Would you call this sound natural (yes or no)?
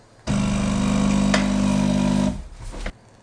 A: yes